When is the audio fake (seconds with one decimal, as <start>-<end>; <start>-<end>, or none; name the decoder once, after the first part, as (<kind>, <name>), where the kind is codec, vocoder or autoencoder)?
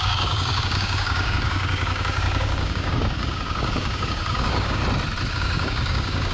0.0-4.8 (codec, DAC); 5.3-6.3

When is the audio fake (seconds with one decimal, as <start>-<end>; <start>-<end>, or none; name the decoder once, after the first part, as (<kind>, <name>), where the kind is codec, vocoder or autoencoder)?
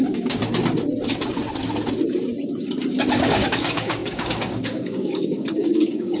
0.0-0.4 (codec, DAC); 2.9-6.2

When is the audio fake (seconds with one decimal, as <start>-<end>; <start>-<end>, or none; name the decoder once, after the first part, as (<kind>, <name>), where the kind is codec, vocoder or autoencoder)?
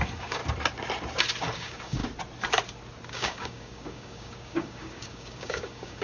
0.0-0.4 (codec, DAC); 1.4-2.0; 3.1-6.0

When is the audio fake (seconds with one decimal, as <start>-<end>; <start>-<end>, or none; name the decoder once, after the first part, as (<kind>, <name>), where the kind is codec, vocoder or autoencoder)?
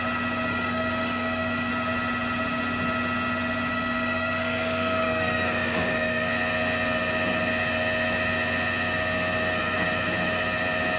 0.5-1.7 (codec, DAC); 3.7-6.3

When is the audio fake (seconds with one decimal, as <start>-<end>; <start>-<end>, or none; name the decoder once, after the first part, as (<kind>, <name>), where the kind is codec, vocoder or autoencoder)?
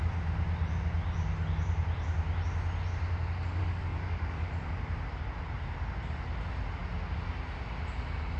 3.6-4.5 (codec, DAC)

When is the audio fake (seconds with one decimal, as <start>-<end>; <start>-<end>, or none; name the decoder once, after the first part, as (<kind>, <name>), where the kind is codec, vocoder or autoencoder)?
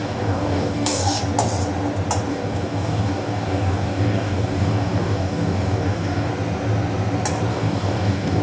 0.0-1.2 (codec, DAC); 2.3-6.3; 7.5-8.4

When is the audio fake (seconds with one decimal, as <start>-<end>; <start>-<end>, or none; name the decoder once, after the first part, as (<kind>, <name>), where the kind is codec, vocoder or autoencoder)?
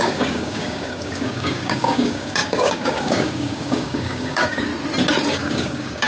0.0-4.7 (codec, DAC); 5.3-6.1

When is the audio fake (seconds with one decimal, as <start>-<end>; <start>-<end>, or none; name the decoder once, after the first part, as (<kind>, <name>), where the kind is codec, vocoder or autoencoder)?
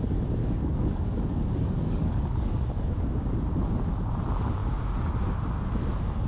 0.4-3.2 (codec, DAC)